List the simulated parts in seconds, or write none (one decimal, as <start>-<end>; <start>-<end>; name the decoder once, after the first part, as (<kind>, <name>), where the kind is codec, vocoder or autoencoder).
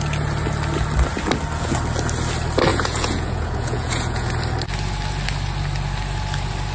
2.7-4.3 (vocoder, Vocos)